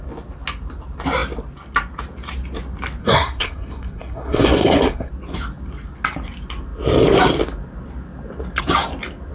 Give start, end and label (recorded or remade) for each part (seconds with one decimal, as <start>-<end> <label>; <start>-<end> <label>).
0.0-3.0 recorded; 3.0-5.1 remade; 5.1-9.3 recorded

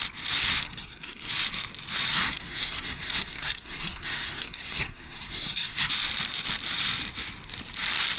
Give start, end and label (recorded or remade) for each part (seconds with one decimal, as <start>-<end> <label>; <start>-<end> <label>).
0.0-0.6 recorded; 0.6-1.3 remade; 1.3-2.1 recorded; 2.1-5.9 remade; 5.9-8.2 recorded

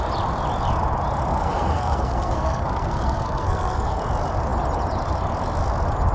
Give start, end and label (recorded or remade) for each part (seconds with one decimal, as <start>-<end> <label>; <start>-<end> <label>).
0.0-1.3 recorded; 1.3-4.0 remade; 4.0-6.1 recorded

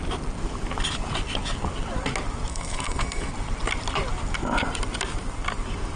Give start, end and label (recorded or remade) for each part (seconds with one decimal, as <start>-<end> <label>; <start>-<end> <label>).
0.0-2.5 recorded; 2.5-3.3 remade; 3.3-6.0 recorded

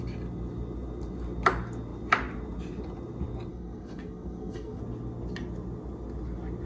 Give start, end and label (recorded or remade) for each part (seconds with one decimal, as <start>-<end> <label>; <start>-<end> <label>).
0.0-3.5 recorded; 3.5-4.8 remade; 4.8-6.7 recorded